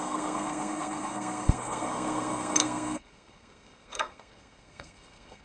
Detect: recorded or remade remade